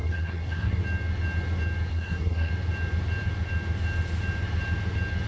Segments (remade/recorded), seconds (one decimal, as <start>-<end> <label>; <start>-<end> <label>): 0.0-0.8 remade; 0.8-1.9 recorded; 1.9-2.5 remade; 2.5-5.3 recorded